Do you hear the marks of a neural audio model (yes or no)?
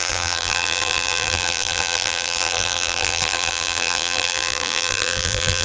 yes